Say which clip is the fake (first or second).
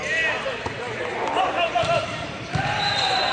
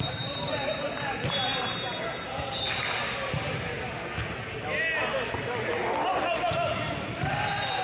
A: first